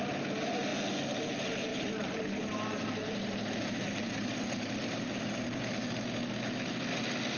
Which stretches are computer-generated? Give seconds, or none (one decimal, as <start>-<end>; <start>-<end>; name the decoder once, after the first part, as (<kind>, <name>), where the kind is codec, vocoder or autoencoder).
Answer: 1.7-5.9 (vocoder, BigVGAN v2)